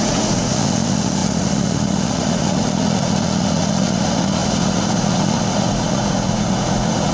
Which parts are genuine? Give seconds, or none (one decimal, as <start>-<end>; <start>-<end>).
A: none

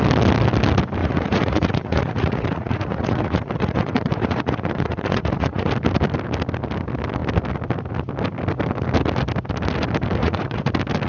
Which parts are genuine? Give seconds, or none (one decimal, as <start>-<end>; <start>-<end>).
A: 0.0-1.0; 5.7-10.2; 10.7-11.1

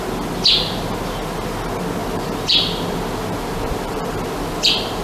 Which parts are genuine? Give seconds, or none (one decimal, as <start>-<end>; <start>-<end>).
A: 0.0-2.0

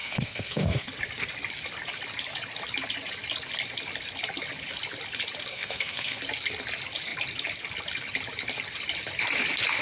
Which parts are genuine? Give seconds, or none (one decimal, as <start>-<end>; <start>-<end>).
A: 0.9-5.5; 6.2-9.8

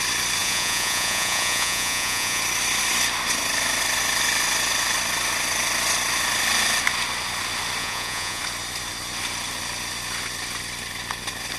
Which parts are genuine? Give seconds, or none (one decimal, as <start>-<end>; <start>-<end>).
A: 0.0-0.4; 2.4-7.8; 8.4-11.6

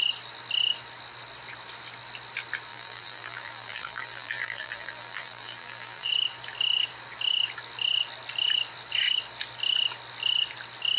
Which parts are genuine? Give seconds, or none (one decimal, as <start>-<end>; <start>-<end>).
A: 0.0-2.7; 6.1-11.0

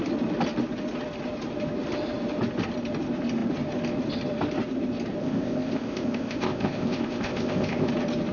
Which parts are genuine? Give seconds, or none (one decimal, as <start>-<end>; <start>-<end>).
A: 0.0-5.2; 7.9-8.3